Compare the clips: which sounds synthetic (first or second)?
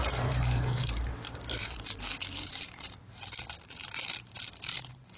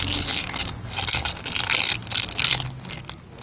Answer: first